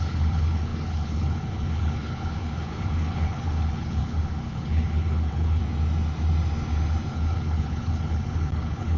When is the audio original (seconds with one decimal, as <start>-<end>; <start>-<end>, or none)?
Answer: 5.6-7.1

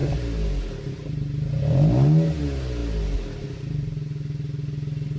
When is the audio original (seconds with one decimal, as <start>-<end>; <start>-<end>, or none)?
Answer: 0.0-5.2

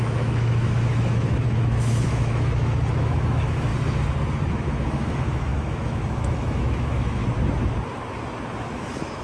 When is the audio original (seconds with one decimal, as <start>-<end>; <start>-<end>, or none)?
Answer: 3.7-4.5; 7.2-8.6

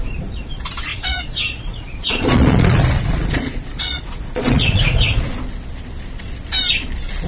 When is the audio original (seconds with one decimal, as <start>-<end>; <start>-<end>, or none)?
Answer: 0.0-0.9; 5.3-7.3

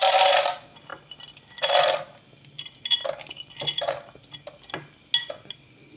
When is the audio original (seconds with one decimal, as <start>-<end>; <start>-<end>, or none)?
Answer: 0.0-6.0

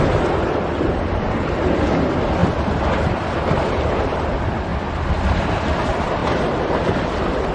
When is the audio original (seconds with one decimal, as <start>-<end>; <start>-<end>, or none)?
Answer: 0.0-2.4; 3.3-7.5

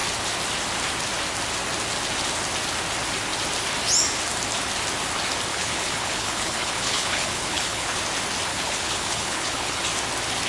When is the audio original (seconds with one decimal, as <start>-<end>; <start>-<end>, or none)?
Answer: 0.0-5.5; 8.0-8.5; 9.8-10.5